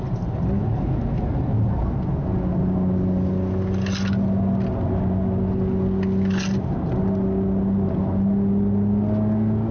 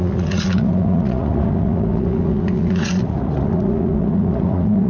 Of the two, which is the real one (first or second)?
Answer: first